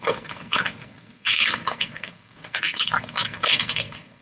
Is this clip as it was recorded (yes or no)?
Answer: no